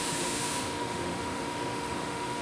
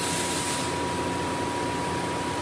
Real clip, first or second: second